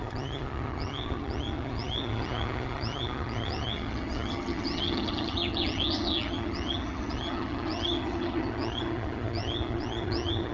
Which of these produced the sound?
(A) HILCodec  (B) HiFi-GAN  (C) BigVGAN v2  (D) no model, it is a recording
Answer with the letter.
B